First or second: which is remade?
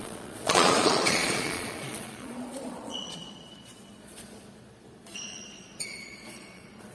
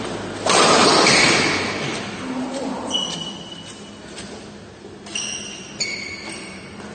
first